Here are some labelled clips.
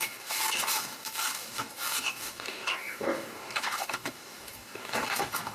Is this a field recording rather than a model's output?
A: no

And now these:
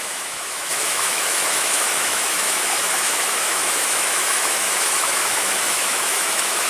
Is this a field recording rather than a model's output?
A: no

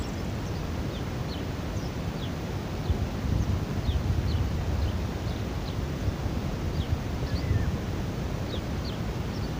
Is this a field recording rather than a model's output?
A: yes